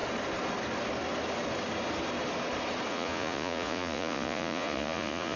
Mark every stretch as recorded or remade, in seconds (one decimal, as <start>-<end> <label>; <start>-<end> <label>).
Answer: 0.0-2.9 recorded; 2.9-5.4 remade